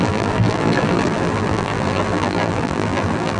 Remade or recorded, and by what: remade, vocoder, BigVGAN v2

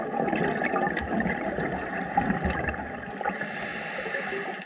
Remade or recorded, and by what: recorded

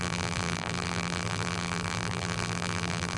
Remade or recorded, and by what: remade, vocoder, BigVGAN v2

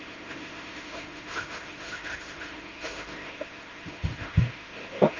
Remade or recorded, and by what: remade, autoencoder, DAC-VAE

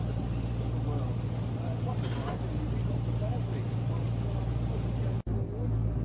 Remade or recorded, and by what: recorded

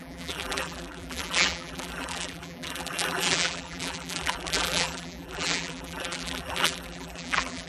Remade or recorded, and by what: remade, vocoder, BigVGAN v2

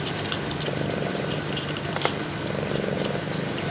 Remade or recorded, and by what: remade, vocoder, BigVGAN v2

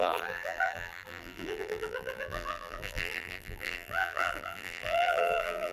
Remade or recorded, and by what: remade, vocoder, BigVGAN v2